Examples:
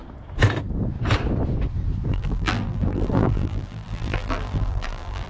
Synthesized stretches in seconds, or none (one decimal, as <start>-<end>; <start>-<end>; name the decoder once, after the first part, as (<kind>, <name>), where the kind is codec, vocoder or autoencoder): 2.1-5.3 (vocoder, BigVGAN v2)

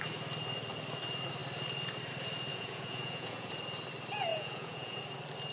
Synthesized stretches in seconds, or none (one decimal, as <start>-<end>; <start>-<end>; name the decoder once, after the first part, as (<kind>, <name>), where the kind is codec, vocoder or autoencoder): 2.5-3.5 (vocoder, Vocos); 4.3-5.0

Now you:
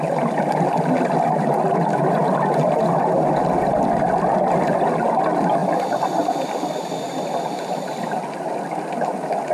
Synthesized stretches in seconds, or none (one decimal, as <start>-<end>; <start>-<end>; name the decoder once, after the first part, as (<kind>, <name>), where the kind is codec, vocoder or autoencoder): none

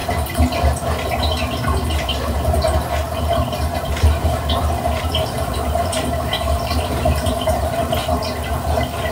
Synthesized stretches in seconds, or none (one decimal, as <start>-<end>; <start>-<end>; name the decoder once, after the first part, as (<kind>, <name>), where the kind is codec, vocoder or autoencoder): 2.0-8.0 (vocoder, BigVGAN v2)

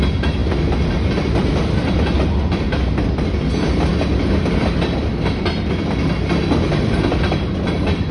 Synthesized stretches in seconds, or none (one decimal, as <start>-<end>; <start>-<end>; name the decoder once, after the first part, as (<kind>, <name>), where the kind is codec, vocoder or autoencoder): none

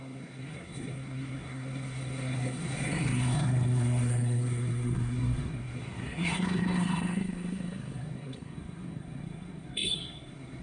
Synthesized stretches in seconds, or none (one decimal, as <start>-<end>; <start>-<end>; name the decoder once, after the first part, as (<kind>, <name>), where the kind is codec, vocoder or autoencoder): 0.0-10.6 (codec, SNAC)

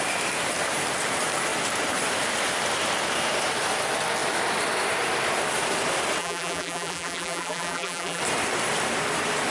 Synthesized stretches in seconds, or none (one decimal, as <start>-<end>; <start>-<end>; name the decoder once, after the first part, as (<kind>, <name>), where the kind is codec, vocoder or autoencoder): 6.2-8.2 (vocoder, BigVGAN v2)